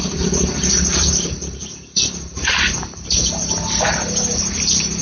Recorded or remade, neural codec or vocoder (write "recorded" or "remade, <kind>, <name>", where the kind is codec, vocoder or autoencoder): remade, vocoder, BigVGAN v2